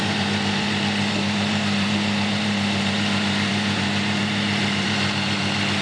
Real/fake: fake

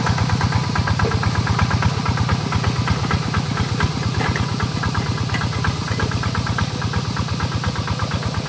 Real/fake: real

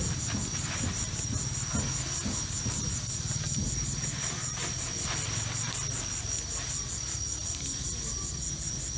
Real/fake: real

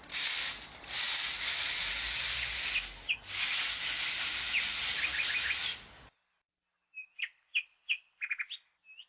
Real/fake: real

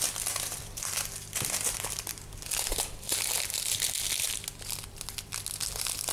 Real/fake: real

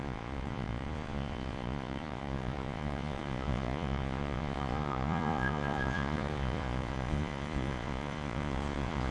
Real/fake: fake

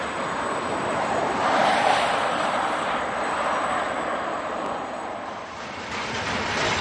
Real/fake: real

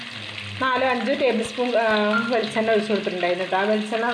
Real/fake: real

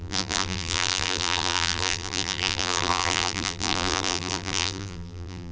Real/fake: fake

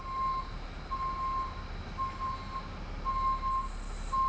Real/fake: real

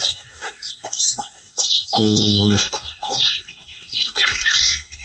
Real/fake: fake